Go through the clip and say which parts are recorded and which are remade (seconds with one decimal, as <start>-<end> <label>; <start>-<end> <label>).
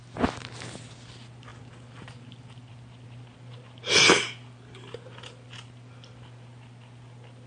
0.0-7.5 recorded